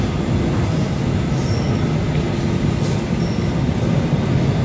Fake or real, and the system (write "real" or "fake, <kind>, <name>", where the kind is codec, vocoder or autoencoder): real